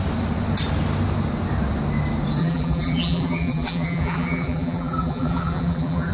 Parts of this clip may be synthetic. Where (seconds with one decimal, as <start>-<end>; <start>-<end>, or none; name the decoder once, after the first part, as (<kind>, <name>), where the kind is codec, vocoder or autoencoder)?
2.4-6.1 (vocoder, BigVGAN v2)